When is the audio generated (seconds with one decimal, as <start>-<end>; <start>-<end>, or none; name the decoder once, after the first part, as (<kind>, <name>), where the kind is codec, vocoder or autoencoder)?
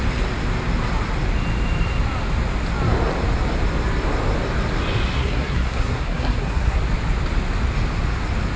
5.2-6.8 (codec, SNAC)